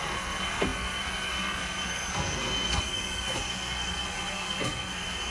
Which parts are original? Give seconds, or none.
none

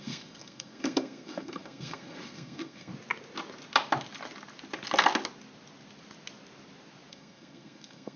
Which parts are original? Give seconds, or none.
2.9-7.1